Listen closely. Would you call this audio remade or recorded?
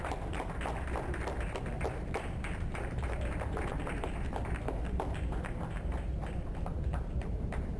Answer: remade